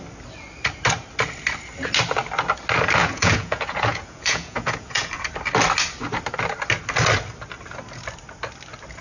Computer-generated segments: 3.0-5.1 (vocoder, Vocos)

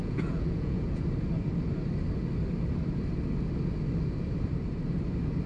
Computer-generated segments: 0.0-1.0 (vocoder, Vocos)

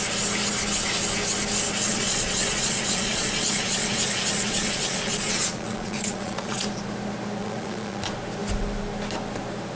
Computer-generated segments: 1.9-6.6 (vocoder, Vocos); 7.4-8.0

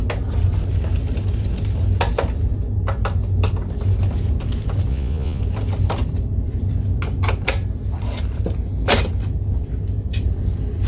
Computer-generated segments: 4.9-5.4 (vocoder, Vocos)

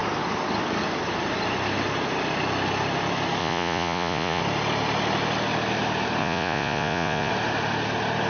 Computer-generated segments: 3.4-4.4 (vocoder, Vocos); 6.2-7.3

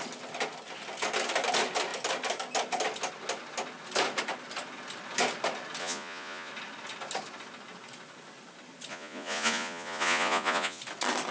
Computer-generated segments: 5.8-6.5 (vocoder, Vocos); 8.9-10.8

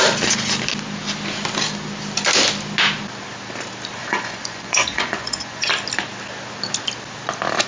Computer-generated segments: 4.0-5.7 (vocoder, Vocos)